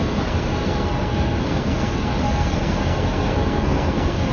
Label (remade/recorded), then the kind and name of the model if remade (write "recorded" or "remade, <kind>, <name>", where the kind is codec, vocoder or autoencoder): remade, codec, SNAC